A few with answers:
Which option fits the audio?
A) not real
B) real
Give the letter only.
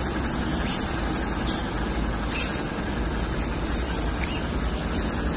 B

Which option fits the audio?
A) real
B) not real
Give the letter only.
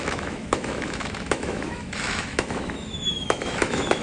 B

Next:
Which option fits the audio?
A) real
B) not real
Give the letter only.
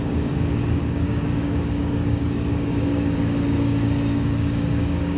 B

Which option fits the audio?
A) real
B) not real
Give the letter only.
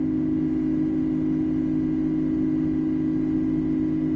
A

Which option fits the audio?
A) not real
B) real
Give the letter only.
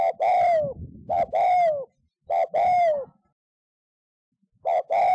B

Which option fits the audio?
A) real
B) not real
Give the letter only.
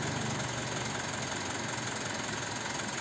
A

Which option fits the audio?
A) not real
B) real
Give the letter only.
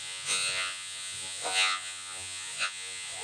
A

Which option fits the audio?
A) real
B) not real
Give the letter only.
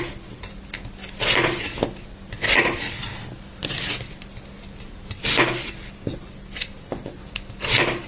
A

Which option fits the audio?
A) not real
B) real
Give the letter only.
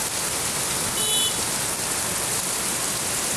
B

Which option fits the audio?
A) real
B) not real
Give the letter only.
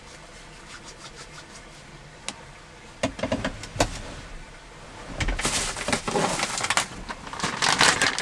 A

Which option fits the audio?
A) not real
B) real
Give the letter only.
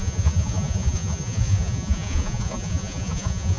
A